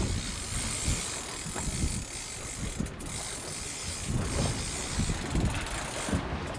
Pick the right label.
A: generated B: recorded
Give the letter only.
B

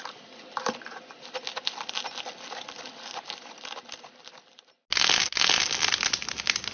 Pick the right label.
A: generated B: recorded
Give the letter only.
B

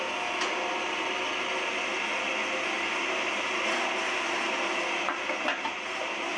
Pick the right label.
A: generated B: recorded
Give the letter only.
B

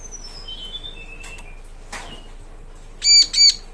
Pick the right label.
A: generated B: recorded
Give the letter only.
B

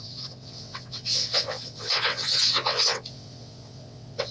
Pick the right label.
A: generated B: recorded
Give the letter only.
A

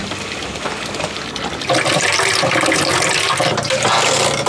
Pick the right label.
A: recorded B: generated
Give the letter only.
A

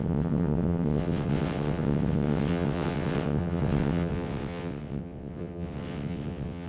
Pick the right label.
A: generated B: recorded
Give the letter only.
A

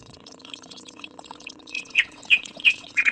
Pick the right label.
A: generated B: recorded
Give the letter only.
A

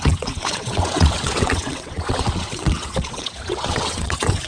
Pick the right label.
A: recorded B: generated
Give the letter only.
B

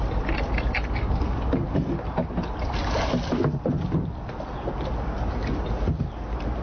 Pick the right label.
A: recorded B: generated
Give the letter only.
A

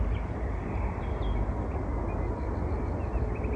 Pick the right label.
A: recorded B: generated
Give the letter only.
A